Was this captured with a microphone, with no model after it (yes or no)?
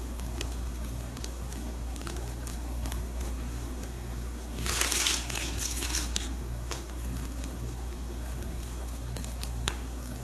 no